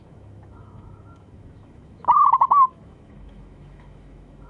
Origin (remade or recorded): remade